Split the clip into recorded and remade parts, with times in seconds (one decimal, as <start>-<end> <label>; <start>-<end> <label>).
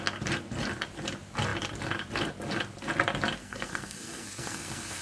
0.0-3.4 recorded; 3.4-5.0 remade